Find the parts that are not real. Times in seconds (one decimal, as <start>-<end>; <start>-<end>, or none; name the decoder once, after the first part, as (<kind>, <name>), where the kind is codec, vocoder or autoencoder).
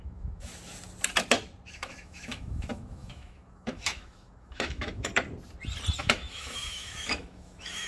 0.0-0.5 (autoencoder, DAC-VAE); 1.7-5.1; 6.0-7.9